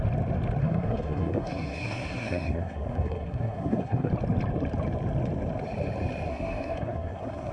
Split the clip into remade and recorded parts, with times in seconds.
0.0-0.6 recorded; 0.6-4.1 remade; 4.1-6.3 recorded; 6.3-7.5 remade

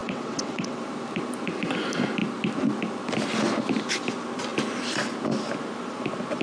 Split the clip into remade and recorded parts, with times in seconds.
0.0-0.8 remade; 0.8-6.4 recorded